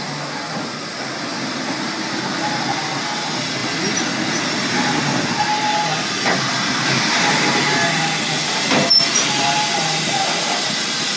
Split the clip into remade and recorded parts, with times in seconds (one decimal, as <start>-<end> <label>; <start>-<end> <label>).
0.0-11.2 recorded